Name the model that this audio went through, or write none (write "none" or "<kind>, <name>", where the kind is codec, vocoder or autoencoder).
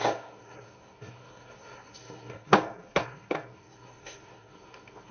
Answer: codec, SNAC